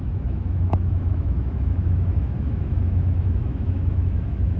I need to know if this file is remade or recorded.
remade